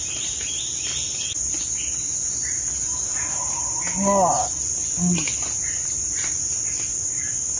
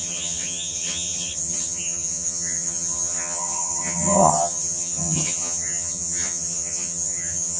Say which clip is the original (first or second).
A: first